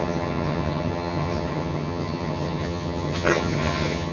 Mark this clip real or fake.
fake